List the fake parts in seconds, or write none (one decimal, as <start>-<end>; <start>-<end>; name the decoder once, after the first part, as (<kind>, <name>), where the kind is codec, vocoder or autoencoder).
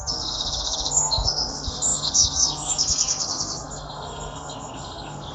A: 0.0-5.3 (codec, SNAC)